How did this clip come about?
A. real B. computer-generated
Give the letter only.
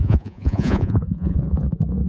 B